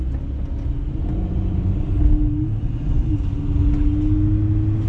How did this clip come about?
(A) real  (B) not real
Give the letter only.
A